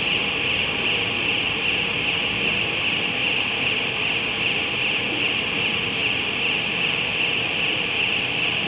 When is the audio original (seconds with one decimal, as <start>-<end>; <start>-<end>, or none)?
6.0-6.7